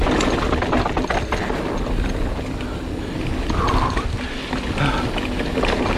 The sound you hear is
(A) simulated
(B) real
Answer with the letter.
B